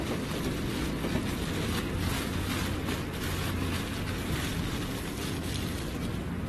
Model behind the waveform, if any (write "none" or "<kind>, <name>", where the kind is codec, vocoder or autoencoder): none